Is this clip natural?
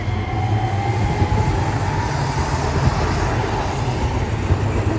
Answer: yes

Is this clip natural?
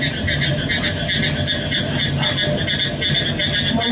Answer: yes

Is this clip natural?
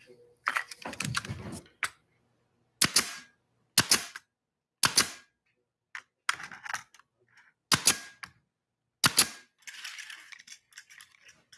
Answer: yes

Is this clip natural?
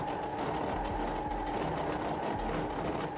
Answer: yes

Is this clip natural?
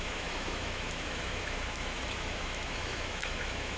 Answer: no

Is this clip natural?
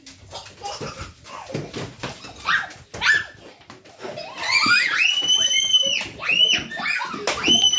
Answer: yes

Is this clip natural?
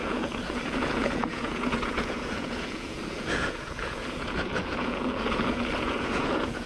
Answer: no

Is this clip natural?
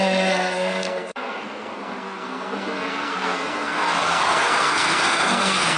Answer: no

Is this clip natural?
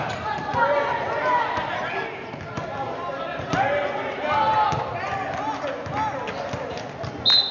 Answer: yes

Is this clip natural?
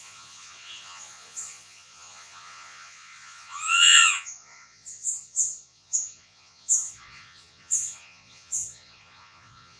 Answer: no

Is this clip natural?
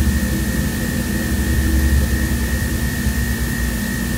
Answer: no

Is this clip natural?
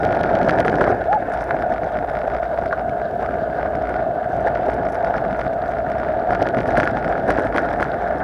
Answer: yes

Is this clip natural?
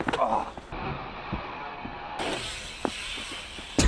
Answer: yes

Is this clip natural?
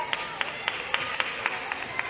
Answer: yes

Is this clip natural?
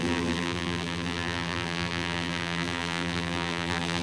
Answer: no